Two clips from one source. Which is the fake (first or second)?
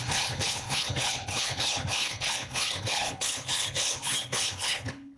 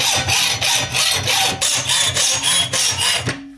first